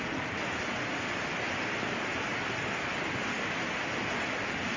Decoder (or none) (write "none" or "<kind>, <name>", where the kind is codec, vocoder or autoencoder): none